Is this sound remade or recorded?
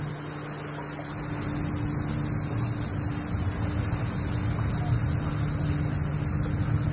recorded